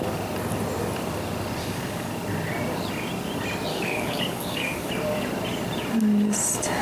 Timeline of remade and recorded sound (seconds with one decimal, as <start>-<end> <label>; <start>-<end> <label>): 0.0-1.6 recorded; 1.6-2.1 remade; 2.1-3.7 recorded; 3.7-4.9 remade; 4.9-6.8 recorded